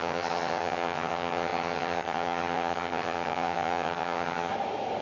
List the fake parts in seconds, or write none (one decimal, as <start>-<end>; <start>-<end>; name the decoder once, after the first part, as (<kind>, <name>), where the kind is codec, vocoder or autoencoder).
0.0-4.5 (vocoder, HiFi-GAN)